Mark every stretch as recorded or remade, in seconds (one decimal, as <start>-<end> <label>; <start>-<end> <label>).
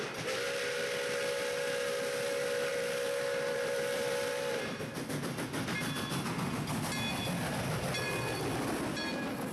0.0-2.7 recorded; 2.7-4.7 remade; 4.7-9.5 recorded